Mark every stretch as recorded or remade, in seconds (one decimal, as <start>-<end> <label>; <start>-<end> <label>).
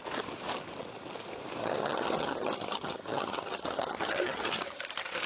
0.0-1.6 recorded; 1.6-4.8 remade; 4.8-5.3 recorded